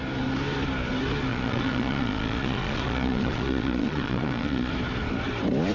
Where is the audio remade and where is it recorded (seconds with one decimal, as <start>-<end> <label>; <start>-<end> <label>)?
0.0-1.3 recorded; 1.3-4.7 remade; 4.7-5.7 recorded